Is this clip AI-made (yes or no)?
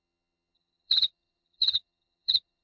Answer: yes